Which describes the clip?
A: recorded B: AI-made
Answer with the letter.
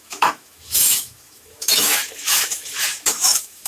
B